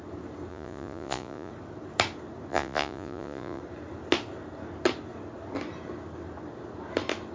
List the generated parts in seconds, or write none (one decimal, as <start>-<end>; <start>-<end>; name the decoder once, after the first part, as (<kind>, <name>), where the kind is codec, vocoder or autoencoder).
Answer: 0.5-1.5 (vocoder, Vocos); 2.5-3.6

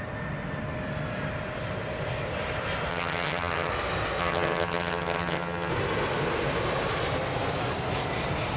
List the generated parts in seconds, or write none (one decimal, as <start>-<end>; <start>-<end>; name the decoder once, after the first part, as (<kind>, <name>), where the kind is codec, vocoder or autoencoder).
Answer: 2.9-3.7 (vocoder, HiFi-GAN); 4.2-5.7

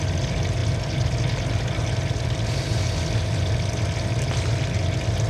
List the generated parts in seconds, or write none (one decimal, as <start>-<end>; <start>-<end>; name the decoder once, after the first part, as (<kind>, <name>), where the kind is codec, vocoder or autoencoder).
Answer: none

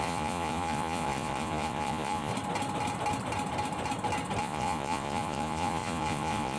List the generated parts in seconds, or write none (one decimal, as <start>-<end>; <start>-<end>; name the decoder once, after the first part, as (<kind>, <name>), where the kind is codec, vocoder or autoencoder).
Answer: 0.0-2.3 (vocoder, Vocos); 4.4-6.6